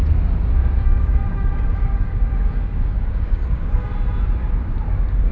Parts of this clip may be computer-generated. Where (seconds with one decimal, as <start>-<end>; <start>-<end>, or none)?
0.6-3.8